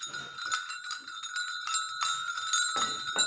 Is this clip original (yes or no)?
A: yes